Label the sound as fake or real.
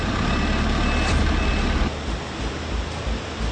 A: real